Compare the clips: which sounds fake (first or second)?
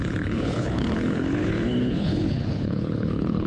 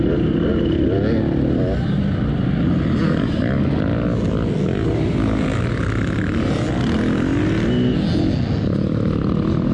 first